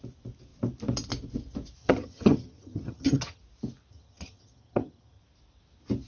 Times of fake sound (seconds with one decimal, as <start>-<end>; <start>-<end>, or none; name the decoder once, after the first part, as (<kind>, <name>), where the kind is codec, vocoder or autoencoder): 1.8-3.4 (vocoder, HiFi-GAN); 3.9-5.2